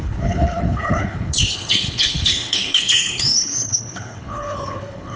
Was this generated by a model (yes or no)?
yes